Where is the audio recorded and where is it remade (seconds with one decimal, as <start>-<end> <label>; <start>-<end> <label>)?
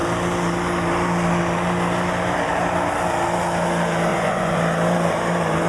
0.0-4.1 recorded; 4.1-4.6 remade; 4.6-5.7 recorded